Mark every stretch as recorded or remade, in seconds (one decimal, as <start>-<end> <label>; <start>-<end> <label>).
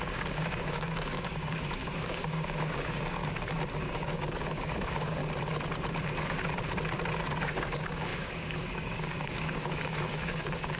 0.0-3.2 remade; 3.2-3.8 recorded; 3.8-5.2 remade; 5.2-7.4 recorded; 7.4-10.8 remade